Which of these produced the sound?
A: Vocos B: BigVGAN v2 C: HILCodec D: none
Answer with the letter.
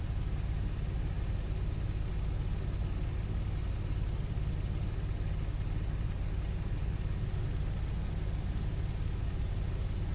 D